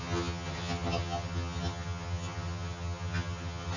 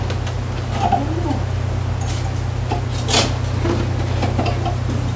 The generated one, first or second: first